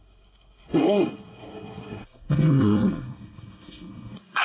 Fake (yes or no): yes